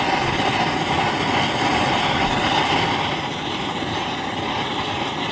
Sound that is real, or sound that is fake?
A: real